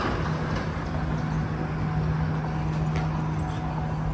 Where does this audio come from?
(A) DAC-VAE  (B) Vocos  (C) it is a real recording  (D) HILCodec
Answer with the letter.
C